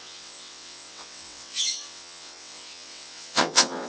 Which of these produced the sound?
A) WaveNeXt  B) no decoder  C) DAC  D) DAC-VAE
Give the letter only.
A